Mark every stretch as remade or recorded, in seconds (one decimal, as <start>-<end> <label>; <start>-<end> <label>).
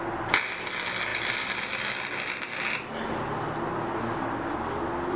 0.0-5.2 recorded